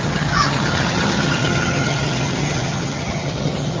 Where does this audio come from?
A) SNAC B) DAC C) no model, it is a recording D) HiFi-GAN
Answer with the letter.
D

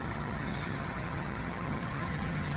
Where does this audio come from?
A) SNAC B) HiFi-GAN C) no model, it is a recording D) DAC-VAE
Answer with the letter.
B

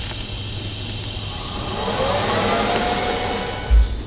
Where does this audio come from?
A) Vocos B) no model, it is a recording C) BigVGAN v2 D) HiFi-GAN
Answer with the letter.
B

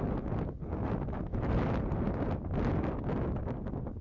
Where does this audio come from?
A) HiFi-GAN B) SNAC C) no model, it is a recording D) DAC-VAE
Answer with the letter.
C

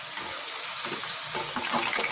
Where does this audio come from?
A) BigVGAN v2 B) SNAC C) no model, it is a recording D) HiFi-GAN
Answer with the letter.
C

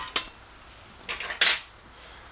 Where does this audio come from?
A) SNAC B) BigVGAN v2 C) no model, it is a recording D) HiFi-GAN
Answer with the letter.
C